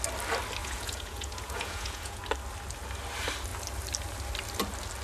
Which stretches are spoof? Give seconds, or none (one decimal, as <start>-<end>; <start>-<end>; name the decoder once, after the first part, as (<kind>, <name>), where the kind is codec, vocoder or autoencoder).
0.6-2.2 (vocoder, Vocos)